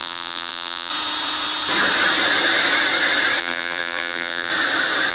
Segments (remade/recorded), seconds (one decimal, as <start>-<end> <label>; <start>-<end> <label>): 0.0-0.9 remade; 0.9-3.4 recorded; 3.4-4.5 remade; 4.5-5.1 recorded